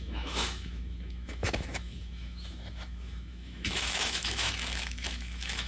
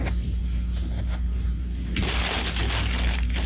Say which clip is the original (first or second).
second